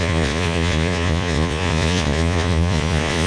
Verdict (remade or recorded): remade